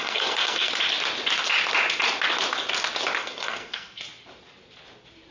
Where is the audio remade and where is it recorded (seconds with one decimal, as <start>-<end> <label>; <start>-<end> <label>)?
0.0-0.7 remade; 0.7-3.2 recorded; 3.2-4.0 remade; 4.0-5.3 recorded